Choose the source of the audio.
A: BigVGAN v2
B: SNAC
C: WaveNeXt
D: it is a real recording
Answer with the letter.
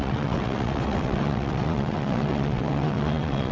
C